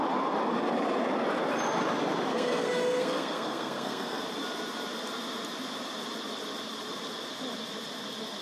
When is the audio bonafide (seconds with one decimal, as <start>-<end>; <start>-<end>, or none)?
0.0-2.3; 4.2-8.4

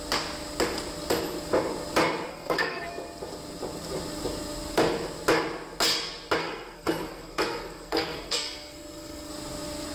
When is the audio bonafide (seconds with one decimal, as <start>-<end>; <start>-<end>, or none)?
0.0-2.3; 2.9-6.4; 9.3-9.9

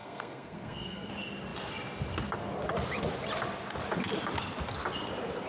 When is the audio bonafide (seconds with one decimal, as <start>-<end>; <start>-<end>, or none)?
1.1-5.5

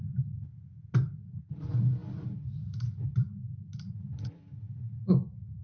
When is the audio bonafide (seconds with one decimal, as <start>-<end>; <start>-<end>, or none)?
0.0-5.6

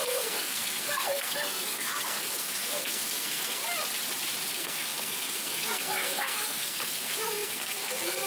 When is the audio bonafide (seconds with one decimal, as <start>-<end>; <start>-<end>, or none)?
3.6-4.5

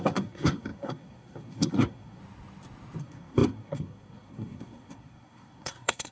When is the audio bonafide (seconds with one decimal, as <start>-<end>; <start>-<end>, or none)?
2.2-3.0

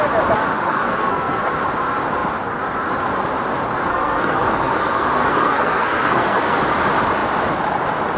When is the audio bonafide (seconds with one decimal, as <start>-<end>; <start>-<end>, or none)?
0.0-0.5; 1.4-3.9; 6.6-8.2